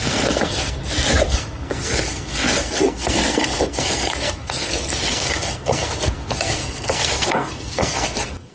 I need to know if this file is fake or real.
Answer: fake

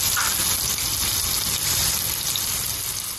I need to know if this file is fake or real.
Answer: real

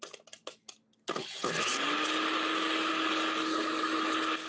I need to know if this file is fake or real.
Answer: real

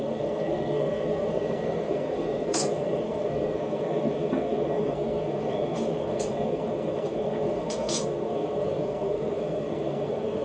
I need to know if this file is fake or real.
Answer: fake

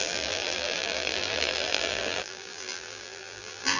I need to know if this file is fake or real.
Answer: fake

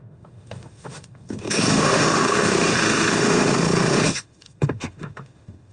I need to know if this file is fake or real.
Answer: fake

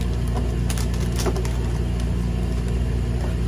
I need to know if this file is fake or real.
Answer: real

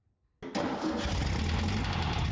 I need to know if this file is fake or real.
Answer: real